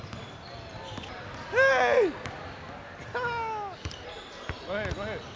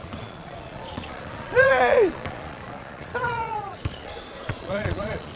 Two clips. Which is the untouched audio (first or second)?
first